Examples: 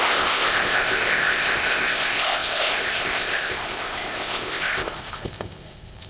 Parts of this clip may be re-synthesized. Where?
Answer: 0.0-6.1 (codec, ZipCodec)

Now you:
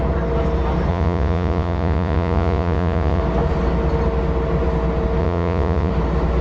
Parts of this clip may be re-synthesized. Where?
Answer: 0.9-3.2 (vocoder, Vocos); 5.2-5.9

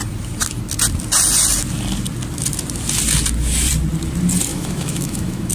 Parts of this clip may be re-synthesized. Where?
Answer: 4.5-5.5 (autoencoder, DAC-VAE)

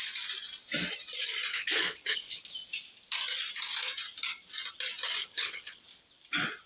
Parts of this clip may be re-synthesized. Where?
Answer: 1.5-2.4 (codec, HILCodec); 5.2-5.8